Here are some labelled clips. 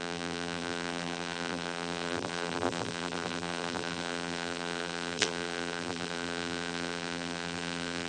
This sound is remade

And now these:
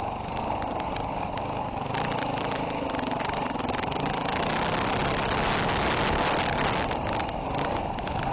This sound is recorded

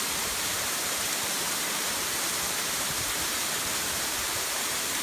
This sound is remade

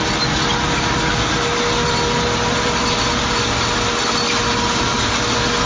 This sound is recorded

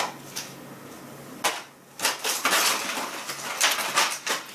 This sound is recorded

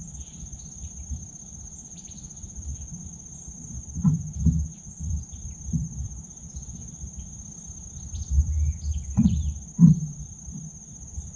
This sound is remade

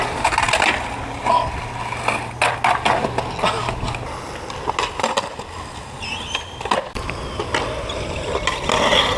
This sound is recorded